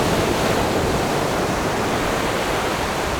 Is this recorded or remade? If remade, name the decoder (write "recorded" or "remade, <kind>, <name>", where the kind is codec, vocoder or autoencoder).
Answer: recorded